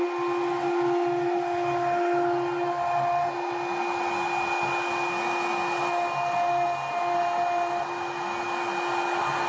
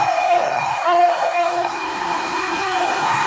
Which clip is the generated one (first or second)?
second